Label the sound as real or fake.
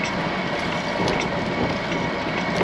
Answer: real